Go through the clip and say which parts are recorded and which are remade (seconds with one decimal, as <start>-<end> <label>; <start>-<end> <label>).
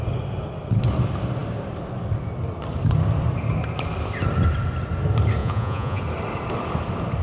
0.0-5.4 recorded; 5.4-6.0 remade; 6.0-7.2 recorded